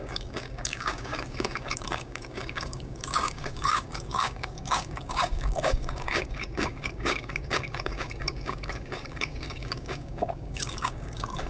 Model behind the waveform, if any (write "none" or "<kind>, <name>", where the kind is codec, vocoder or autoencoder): codec, DAC